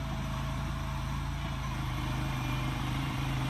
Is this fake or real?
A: fake